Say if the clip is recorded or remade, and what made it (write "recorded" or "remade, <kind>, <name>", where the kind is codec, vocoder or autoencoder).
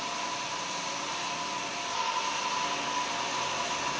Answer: recorded